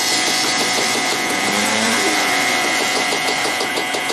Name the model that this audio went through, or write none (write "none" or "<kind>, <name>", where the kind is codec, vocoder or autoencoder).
vocoder, Vocos